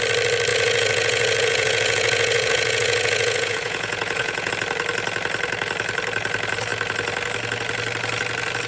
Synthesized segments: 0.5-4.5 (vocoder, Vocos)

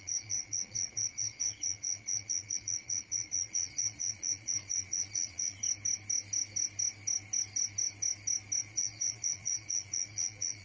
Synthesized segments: 0.0-5.6 (vocoder, Vocos); 8.6-10.6

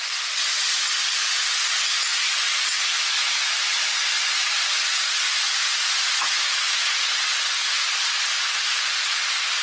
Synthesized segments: none

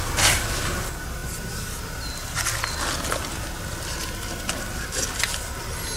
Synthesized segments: none